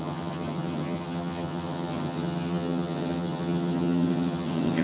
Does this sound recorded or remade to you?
remade